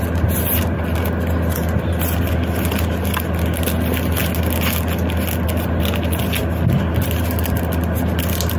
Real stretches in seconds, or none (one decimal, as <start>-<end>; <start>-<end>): 0.0-8.6